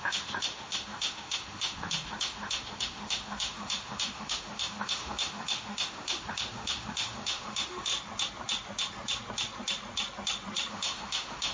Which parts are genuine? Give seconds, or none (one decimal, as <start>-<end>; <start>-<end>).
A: 7.9-10.7